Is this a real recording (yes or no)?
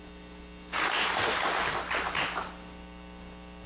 yes